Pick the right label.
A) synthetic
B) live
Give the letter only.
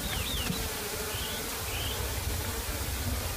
B